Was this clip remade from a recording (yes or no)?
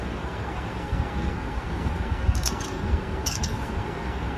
yes